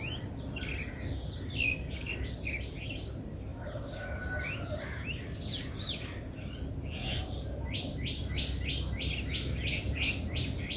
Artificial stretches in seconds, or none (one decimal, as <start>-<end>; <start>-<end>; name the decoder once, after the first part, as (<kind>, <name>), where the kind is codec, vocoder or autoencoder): none